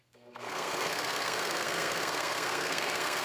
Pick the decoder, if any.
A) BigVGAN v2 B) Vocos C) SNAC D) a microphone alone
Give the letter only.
C